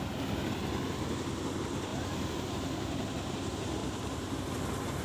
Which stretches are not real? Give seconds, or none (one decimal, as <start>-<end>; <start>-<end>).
1.9-2.5; 3.8-4.5